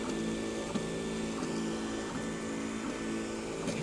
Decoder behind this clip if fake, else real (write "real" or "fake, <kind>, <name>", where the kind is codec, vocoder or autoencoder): real